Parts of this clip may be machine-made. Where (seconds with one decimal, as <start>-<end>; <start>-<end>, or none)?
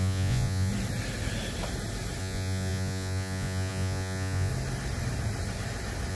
0.0-0.7; 2.2-4.5